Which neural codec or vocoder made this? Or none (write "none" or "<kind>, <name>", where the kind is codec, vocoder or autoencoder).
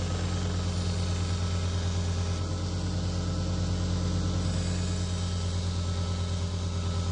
none